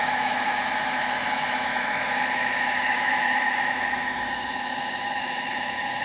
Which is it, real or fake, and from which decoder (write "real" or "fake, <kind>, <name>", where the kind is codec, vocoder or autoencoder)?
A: fake, autoencoder, DAC-VAE